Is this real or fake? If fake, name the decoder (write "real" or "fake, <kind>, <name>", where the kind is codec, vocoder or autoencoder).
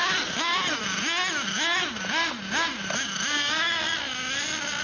real